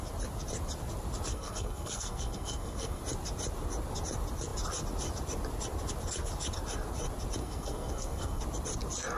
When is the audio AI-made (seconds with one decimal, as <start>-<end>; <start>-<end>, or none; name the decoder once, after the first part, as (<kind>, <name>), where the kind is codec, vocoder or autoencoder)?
1.3-3.0 (codec, SNAC); 7.4-8.4